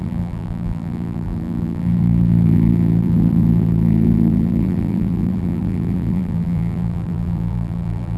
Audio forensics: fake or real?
fake